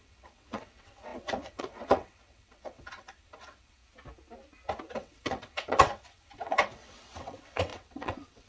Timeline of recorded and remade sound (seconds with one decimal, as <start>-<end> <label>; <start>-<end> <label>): 0.0-3.8 remade; 3.8-4.9 recorded; 4.9-8.5 remade